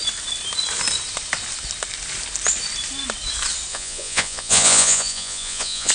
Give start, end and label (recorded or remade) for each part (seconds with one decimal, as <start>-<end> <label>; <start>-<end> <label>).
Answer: 0.0-3.7 recorded; 3.7-5.9 remade

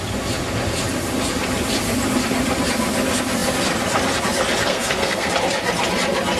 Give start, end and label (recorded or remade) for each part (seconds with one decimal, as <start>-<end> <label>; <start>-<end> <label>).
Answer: 0.0-4.7 recorded; 4.7-5.3 remade; 5.3-6.4 recorded

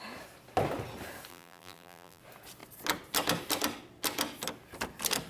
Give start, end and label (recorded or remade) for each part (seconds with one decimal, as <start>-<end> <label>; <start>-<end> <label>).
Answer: 0.0-1.3 recorded; 1.3-2.2 remade; 2.2-5.3 recorded

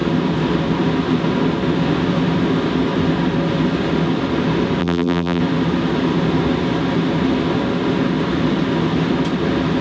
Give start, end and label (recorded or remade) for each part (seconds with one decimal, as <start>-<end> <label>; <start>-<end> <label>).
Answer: 0.0-4.8 recorded; 4.8-5.4 remade; 5.4-9.8 recorded

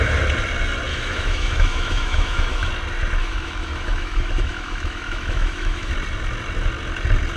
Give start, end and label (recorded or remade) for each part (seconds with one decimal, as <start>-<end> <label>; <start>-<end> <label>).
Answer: 0.0-0.9 recorded; 0.9-2.7 remade; 2.7-3.2 recorded; 3.2-5.9 remade; 5.9-7.4 recorded

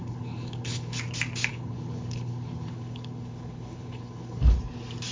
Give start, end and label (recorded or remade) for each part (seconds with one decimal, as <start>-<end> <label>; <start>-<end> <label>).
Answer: 0.0-1.0 remade; 1.0-1.5 recorded; 1.5-4.6 remade; 4.6-5.1 recorded